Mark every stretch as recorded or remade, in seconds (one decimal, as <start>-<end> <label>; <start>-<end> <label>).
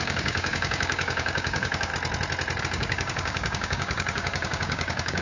0.0-1.9 remade; 1.9-2.6 recorded; 2.6-5.2 remade